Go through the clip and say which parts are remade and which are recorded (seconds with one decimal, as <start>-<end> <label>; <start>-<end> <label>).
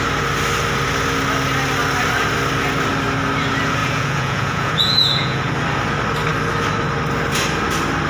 0.0-3.8 recorded; 3.8-5.5 remade; 5.5-8.1 recorded